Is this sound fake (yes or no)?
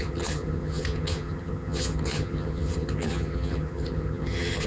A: yes